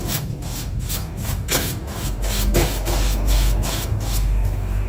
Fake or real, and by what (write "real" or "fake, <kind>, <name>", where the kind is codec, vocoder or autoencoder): fake, codec, DAC